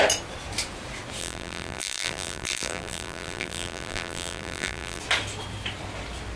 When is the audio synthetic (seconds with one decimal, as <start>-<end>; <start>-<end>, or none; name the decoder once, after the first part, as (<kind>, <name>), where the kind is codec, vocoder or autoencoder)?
1.2-5.0 (vocoder, BigVGAN v2)